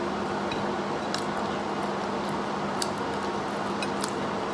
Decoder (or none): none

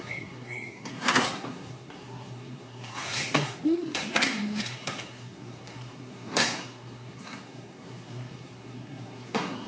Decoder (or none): codec, SNAC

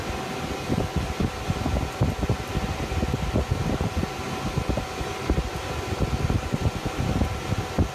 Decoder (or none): none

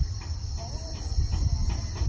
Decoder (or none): none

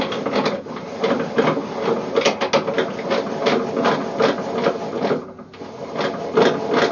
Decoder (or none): none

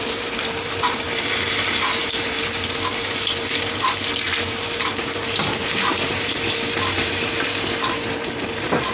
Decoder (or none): vocoder, BigVGAN v2